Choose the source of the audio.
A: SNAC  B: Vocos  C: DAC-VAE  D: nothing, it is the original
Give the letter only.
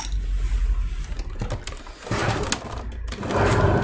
D